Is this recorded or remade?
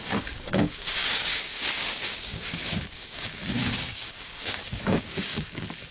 remade